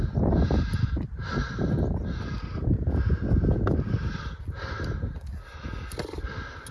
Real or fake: real